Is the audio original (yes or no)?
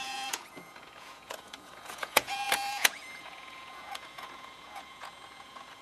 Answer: no